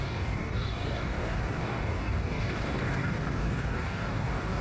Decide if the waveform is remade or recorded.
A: remade